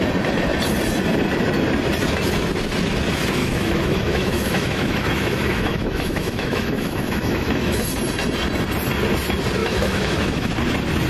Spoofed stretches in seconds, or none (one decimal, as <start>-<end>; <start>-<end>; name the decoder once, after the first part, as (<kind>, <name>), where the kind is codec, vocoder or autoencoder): 3.4-7.8 (autoencoder, DAC-VAE); 9.6-10.5